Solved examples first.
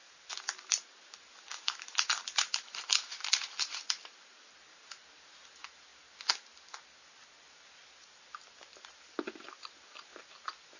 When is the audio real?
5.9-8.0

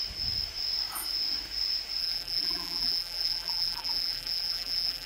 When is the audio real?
0.0-2.0

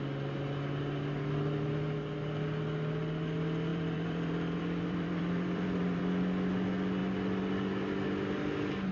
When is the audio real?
0.0-3.7; 6.0-8.9